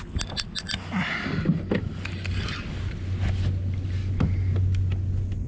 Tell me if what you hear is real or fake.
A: real